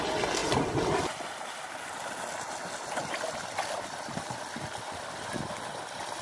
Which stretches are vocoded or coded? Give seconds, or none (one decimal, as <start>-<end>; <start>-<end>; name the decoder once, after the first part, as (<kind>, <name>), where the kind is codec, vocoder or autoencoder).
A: none